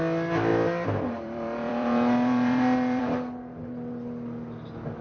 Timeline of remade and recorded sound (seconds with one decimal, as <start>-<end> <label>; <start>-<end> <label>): 0.0-0.5 recorded; 0.5-3.0 remade; 3.0-5.0 recorded